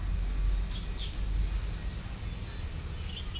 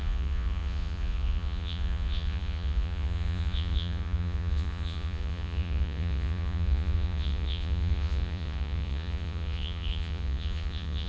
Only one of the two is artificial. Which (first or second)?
second